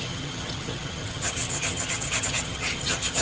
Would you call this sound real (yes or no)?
no